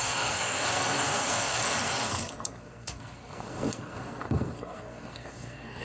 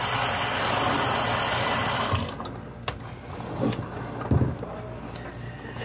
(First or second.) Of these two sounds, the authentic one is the second